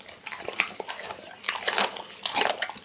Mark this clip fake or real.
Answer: real